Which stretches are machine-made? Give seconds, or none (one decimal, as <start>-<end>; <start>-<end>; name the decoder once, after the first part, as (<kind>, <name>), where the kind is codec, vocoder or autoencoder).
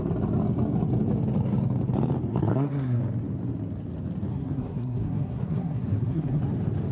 2.3-3.0 (codec, SNAC); 4.3-6.4